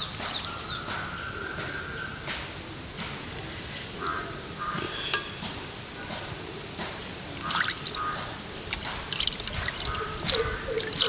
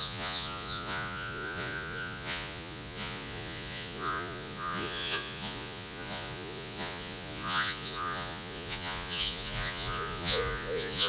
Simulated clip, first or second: second